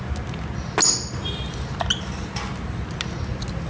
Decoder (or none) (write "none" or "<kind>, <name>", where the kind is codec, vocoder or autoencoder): none